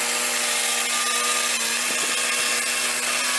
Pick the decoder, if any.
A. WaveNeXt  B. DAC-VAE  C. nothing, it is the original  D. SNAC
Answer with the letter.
C